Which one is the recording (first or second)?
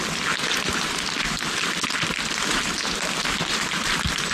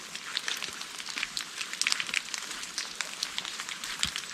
first